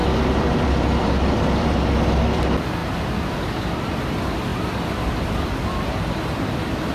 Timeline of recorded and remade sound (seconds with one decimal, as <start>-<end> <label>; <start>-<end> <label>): 0.0-2.4 remade; 2.4-2.8 recorded; 2.8-4.0 remade; 4.0-6.9 recorded